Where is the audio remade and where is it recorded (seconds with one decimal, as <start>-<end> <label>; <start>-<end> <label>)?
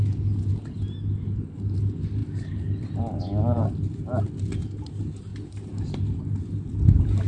0.0-7.3 recorded